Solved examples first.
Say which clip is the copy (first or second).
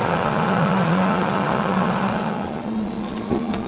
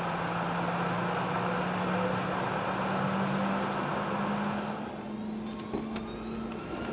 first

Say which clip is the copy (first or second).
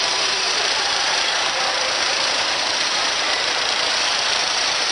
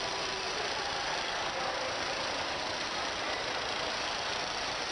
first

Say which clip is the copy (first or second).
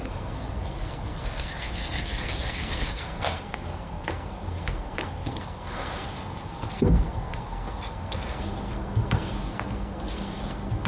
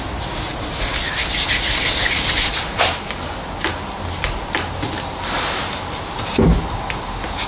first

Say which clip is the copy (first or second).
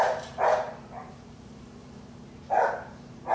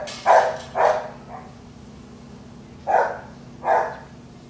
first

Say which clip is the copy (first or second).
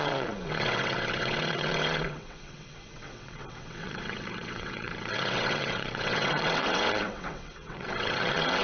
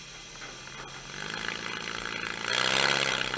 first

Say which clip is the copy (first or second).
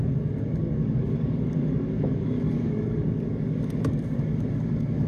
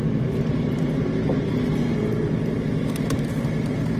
first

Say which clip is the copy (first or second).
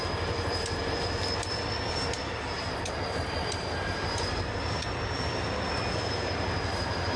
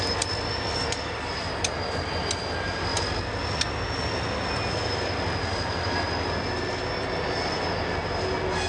first